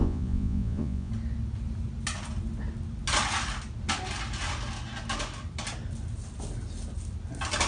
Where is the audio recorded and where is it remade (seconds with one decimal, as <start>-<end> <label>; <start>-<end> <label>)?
0.0-1.1 remade; 1.1-7.7 recorded